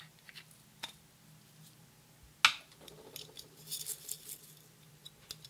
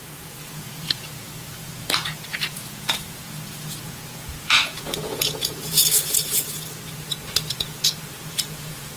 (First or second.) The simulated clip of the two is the second